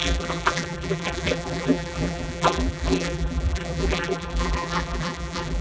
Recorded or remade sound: remade